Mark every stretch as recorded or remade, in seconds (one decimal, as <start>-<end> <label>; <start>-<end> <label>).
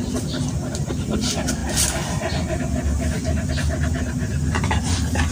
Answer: 0.0-5.3 recorded